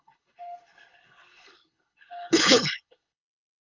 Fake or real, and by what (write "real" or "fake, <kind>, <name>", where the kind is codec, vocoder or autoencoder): fake, codec, HILCodec